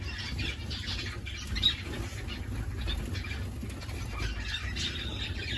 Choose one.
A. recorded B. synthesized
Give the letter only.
A